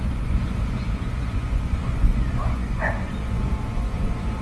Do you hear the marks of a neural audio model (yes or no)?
yes